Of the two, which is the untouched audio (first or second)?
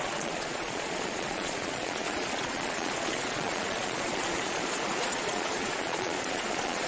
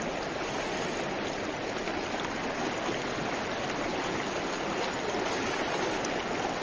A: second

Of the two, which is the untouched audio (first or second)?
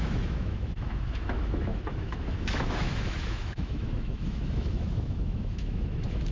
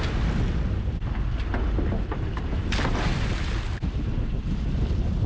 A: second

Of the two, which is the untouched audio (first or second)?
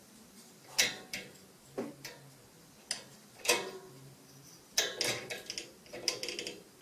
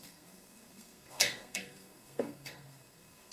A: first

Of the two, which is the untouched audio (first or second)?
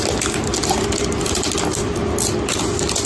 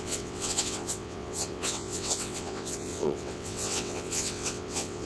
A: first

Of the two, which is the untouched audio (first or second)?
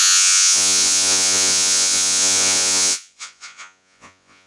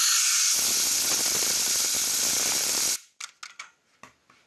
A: second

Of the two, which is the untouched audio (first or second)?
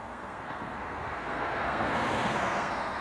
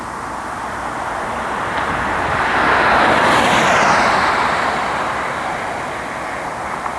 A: second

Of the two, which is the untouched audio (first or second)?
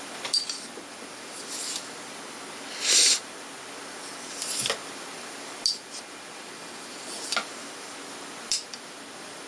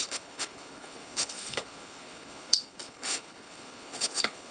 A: first